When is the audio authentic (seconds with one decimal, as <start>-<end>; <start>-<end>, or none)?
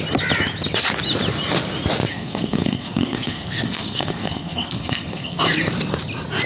0.0-2.1; 5.4-6.5